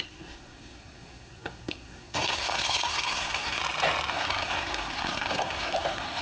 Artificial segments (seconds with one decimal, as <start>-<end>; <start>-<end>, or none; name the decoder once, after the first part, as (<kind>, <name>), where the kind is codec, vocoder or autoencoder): 0.0-3.6 (codec, SNAC); 4.1-6.2